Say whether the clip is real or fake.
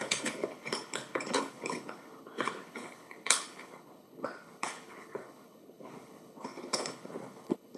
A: fake